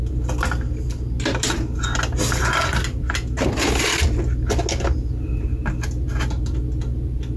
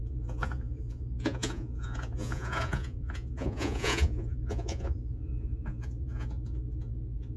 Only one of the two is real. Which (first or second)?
first